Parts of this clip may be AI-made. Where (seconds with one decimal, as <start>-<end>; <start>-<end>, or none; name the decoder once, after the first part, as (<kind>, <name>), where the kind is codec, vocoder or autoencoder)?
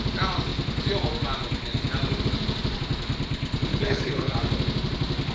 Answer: 3.7-4.3 (codec, HILCodec)